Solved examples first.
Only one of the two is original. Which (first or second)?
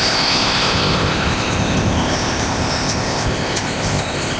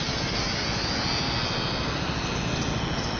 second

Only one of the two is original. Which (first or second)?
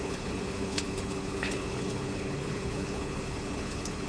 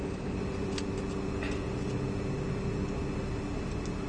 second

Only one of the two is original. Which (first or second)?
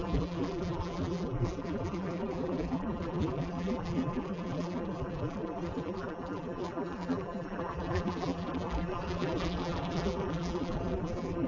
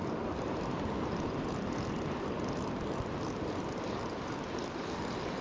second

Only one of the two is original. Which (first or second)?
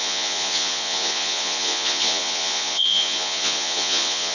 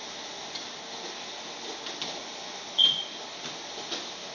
second